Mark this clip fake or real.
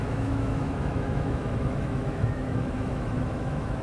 fake